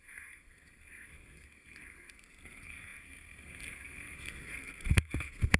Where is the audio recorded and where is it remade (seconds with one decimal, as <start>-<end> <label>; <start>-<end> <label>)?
0.0-5.6 remade